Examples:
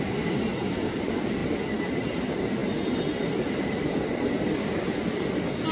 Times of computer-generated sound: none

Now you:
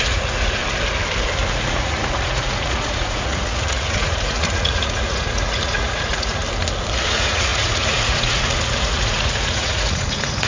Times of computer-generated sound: 0.0-0.6 (vocoder, Vocos); 1.5-6.4; 7.1-10.5

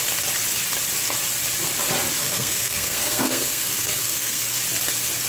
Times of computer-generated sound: 2.2-4.6 (codec, SNAC)

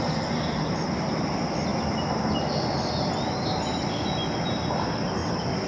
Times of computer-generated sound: none

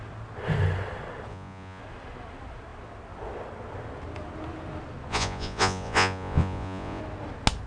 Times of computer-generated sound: 1.3-1.8 (vocoder, Vocos); 5.1-7.0

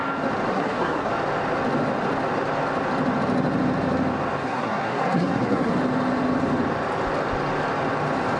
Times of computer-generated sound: 0.5-1.1 (codec, SNAC); 4.4-5.7

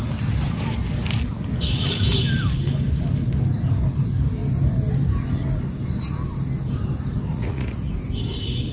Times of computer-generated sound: 7.3-7.9 (vocoder, Vocos)